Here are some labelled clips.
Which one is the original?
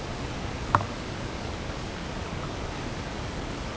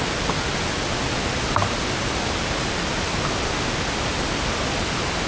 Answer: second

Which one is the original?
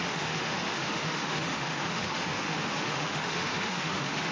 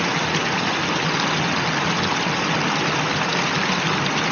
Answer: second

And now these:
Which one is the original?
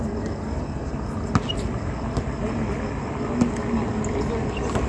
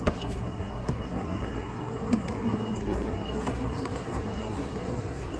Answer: first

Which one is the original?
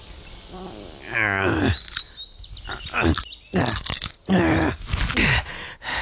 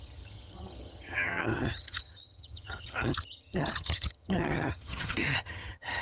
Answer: first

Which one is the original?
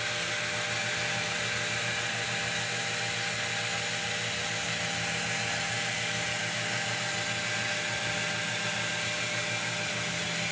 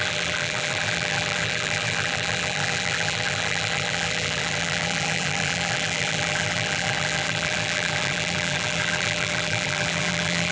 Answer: first